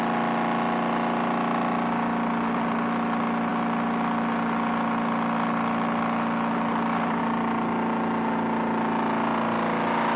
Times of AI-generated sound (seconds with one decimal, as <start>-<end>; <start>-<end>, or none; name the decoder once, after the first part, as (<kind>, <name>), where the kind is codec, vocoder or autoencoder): none